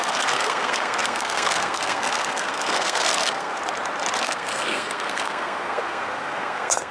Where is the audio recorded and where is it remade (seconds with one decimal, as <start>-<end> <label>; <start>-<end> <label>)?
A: 0.0-3.6 remade; 3.6-4.2 recorded; 4.2-6.9 remade